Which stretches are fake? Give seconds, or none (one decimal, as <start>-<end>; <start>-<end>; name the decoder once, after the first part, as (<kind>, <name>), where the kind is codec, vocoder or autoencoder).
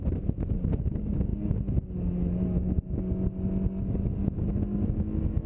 none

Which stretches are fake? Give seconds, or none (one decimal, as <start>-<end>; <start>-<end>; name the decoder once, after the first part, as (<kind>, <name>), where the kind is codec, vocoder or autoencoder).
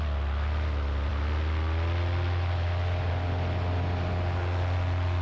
none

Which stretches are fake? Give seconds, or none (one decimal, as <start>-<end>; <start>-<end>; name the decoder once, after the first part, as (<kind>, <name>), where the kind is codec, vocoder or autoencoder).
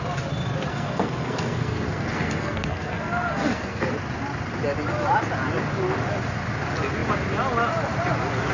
0.7-3.9 (codec, SNAC)